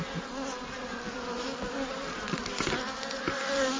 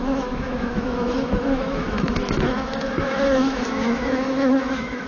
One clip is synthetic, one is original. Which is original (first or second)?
first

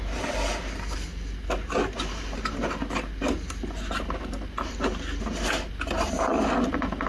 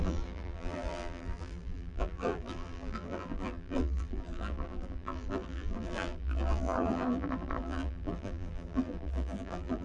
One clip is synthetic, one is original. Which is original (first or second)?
first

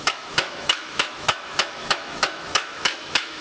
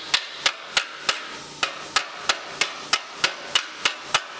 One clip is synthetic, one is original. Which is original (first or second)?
second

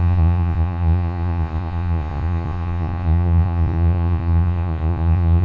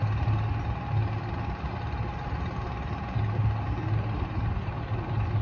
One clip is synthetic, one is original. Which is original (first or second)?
second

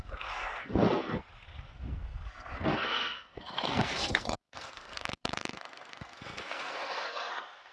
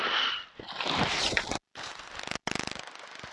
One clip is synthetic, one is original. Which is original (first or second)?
second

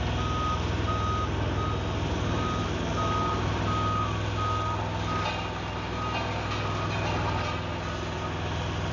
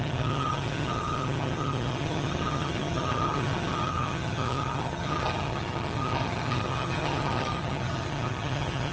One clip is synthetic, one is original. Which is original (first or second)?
first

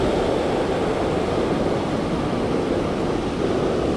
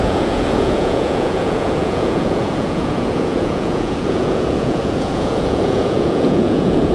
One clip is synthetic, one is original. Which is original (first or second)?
first